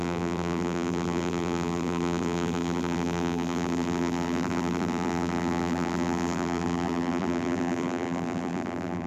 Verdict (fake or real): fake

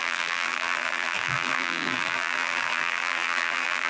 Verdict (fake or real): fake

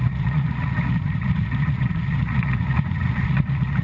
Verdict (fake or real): fake